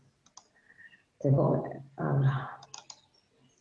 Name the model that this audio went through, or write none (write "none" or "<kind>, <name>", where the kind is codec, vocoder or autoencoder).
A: none